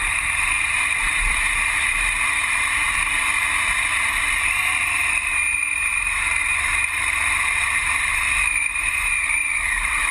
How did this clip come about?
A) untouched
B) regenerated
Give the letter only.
B